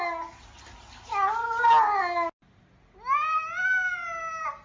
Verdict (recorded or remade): recorded